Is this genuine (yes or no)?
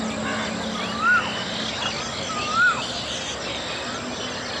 yes